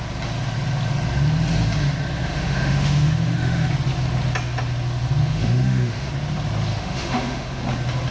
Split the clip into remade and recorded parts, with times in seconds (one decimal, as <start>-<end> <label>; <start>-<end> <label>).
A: 0.0-2.2 recorded; 2.2-3.7 remade; 3.7-5.2 recorded; 5.2-6.1 remade; 6.1-6.7 recorded; 6.7-7.6 remade; 7.6-8.1 recorded